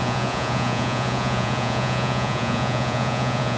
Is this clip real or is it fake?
fake